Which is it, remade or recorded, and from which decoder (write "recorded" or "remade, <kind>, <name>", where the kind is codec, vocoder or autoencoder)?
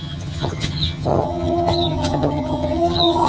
remade, vocoder, HiFi-GAN